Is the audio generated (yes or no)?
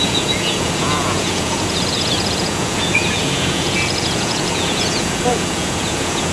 yes